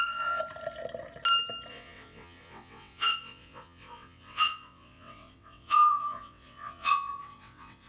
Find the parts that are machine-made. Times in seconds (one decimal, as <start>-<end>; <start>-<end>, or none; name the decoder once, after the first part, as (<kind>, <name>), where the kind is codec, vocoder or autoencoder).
0.0-0.4 (vocoder, WaveNeXt); 1.7-7.9